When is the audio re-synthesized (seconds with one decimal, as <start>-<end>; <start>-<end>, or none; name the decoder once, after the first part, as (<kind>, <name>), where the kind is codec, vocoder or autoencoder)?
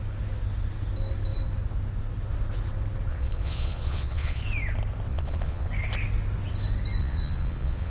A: 3.1-4.4 (vocoder, Vocos); 5.1-5.7; 7.0-7.9